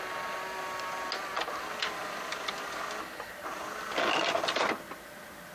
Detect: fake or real real